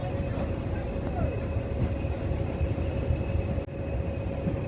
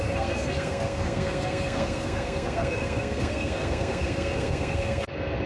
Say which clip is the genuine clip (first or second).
first